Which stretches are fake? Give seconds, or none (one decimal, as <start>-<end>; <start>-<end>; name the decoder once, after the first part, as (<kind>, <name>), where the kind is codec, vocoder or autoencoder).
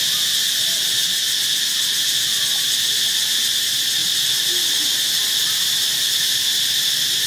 none